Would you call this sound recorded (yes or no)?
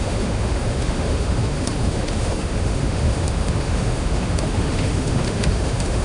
no